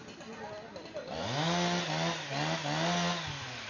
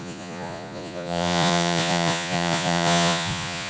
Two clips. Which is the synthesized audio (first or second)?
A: second